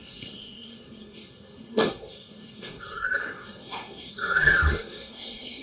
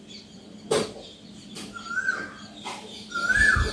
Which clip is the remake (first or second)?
first